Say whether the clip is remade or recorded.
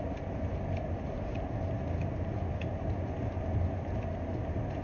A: recorded